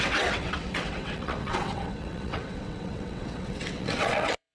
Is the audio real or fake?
fake